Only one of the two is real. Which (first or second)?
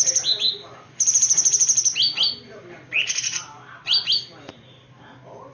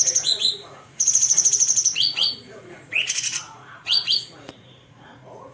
first